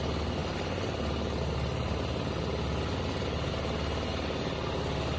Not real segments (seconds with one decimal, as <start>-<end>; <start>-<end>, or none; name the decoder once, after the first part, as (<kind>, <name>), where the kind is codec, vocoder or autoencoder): none

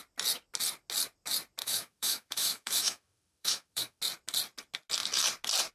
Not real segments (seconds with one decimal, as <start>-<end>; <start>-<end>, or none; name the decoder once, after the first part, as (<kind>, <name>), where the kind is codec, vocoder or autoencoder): 1.6-4.0 (autoencoder, DAC-VAE)

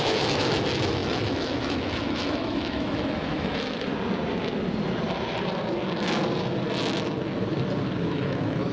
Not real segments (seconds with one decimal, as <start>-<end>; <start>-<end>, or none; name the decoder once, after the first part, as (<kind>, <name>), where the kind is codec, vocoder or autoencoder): 0.0-3.9 (autoencoder, DAC-VAE); 8.0-8.7

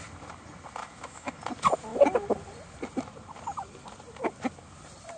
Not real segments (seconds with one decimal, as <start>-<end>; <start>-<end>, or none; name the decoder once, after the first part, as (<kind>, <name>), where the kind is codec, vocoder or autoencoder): 0.8-1.4 (autoencoder, DAC-VAE)

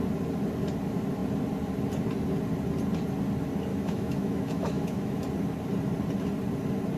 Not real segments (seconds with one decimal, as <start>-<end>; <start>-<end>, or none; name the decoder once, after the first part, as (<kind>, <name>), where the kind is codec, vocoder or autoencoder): 3.7-5.2 (autoencoder, DAC-VAE)